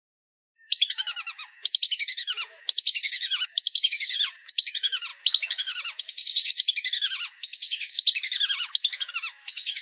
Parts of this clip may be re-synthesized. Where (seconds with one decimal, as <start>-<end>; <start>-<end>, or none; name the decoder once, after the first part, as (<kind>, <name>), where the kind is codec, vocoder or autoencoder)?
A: 0.0-9.8 (autoencoder, DAC-VAE)